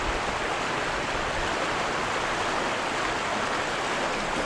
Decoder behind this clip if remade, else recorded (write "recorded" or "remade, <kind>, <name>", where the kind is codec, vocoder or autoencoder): recorded